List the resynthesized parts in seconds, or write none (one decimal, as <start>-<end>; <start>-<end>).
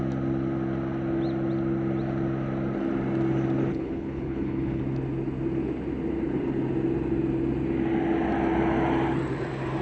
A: 3.7-4.8